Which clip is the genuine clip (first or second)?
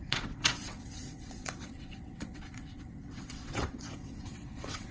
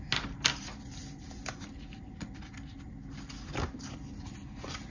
second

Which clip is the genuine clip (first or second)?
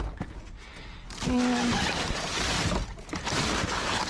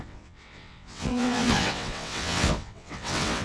first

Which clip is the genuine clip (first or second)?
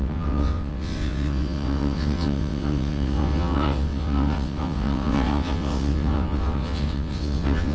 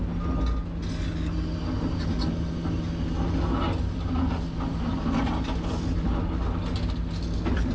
second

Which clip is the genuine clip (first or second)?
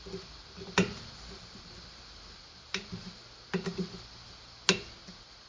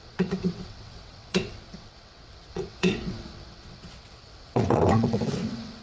first